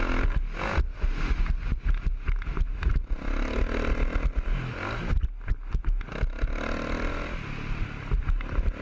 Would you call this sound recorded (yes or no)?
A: yes